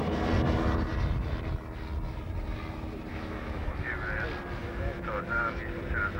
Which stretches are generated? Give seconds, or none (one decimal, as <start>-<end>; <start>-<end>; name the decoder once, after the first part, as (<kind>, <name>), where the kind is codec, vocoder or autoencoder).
3.1-3.9 (autoencoder, DAC-VAE); 4.6-5.6